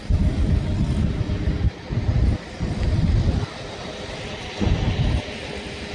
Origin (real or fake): fake